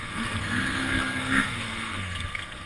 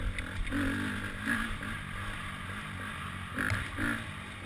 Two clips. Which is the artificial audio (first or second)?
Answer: first